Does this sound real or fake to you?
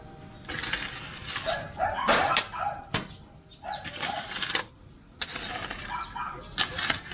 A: real